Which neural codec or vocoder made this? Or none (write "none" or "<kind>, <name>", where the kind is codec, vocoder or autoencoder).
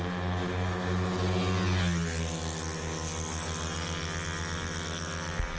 none